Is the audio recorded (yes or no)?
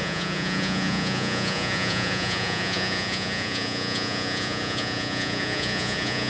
no